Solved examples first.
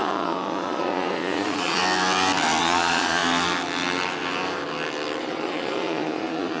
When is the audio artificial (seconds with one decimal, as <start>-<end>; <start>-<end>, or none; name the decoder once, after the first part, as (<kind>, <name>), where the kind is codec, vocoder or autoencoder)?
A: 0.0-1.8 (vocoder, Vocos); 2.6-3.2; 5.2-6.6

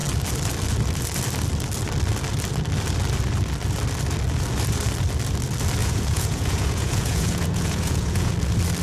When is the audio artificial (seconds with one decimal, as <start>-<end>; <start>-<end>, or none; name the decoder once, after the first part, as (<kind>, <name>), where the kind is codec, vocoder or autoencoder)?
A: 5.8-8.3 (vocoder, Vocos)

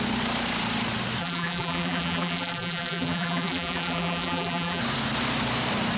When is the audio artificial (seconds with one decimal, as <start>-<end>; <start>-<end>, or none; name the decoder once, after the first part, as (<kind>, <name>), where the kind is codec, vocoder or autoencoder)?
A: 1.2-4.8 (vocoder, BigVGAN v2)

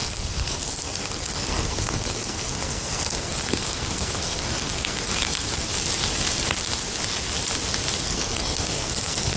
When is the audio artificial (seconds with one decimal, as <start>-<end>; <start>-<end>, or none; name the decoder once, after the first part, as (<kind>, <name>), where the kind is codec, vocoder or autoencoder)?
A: 0.0-5.7 (codec, SNAC); 8.0-9.4

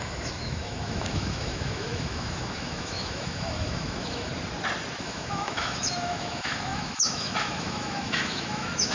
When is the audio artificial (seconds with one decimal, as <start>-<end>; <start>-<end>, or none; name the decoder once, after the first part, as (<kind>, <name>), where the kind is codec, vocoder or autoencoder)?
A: 0.0-4.3 (autoencoder, DAC-VAE); 5.0-8.9